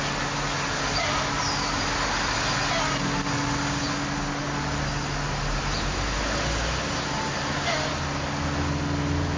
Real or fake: real